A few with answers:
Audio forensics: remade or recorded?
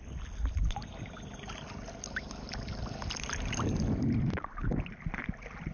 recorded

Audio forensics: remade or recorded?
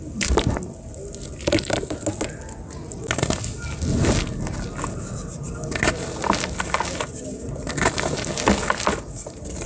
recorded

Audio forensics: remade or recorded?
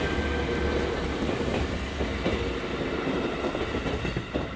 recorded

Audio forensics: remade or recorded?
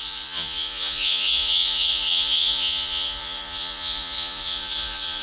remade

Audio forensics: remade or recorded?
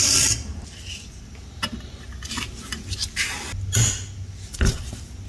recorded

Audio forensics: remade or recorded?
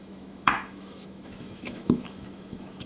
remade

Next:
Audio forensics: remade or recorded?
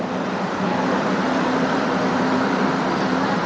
remade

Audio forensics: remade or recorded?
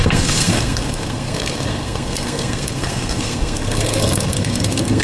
remade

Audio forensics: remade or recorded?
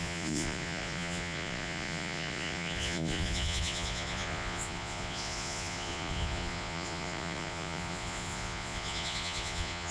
remade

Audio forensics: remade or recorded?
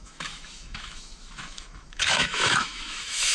remade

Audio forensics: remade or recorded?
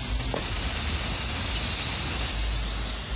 recorded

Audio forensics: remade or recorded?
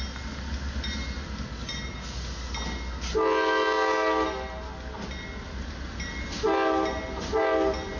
recorded